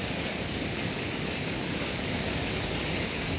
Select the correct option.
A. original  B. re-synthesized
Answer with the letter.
B